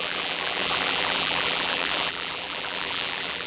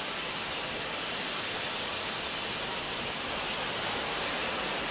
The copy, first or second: first